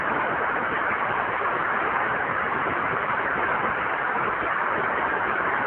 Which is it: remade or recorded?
recorded